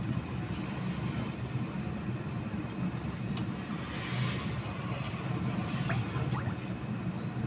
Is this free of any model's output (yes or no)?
yes